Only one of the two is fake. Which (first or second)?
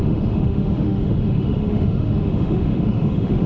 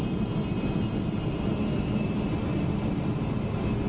first